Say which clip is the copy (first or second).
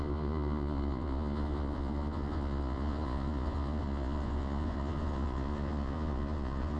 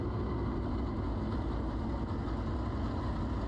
first